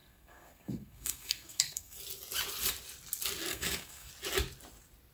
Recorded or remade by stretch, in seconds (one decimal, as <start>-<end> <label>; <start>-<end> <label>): 0.0-2.0 remade; 2.0-3.5 recorded; 3.5-4.1 remade; 4.1-5.1 recorded